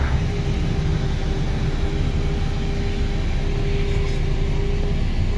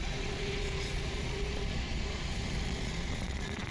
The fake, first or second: second